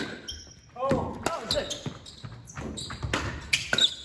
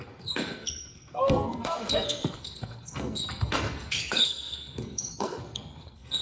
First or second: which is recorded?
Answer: first